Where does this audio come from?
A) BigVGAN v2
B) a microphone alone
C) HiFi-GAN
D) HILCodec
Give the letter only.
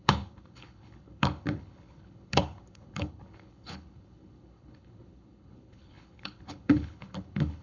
D